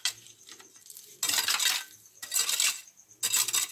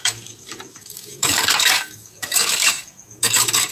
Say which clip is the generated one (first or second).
second